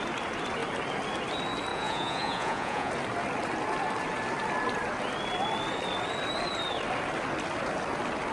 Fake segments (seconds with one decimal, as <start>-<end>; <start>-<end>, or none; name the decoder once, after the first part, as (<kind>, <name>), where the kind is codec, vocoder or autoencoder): 1.7-2.9 (vocoder, Vocos)